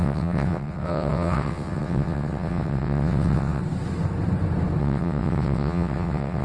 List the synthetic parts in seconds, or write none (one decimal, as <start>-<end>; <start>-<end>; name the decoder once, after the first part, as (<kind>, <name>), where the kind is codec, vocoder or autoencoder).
0.0-3.6 (vocoder, WaveNeXt); 4.8-6.4